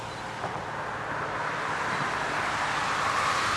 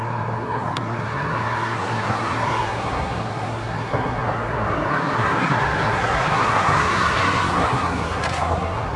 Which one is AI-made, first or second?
second